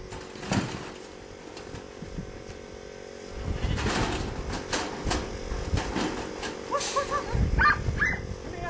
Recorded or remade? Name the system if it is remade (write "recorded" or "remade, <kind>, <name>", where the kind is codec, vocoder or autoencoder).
recorded